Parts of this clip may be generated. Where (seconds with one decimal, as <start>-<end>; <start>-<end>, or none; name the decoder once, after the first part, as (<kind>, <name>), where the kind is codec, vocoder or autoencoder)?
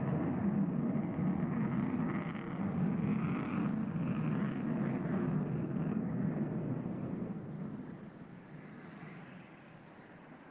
5.9-7.5 (codec, SNAC)